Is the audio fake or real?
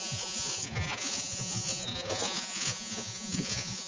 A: fake